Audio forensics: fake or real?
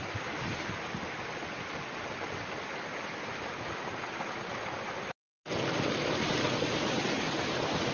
real